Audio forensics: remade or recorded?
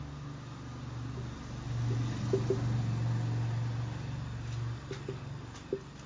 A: recorded